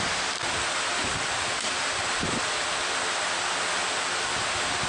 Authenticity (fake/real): fake